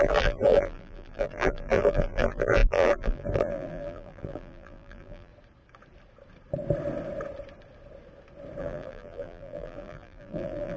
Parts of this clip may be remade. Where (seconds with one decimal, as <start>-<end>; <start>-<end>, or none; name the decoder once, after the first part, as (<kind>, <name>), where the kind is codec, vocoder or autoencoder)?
0.0-5.3 (vocoder, BigVGAN v2); 8.6-10.8